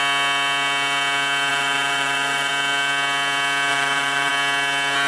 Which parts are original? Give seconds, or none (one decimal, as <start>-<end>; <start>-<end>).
0.0-1.5; 2.5-3.7; 4.3-5.1